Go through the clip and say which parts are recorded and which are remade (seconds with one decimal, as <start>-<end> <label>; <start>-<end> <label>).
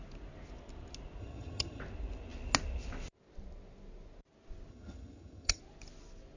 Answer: 0.0-1.2 recorded; 1.2-1.8 remade; 1.8-4.7 recorded; 4.7-5.6 remade; 5.6-6.4 recorded